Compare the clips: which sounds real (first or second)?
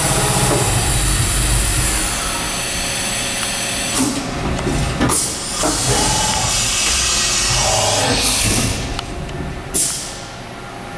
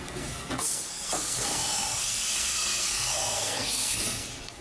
first